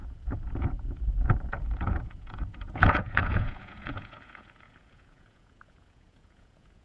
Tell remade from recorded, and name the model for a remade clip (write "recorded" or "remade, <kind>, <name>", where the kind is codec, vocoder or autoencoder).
remade, vocoder, Vocos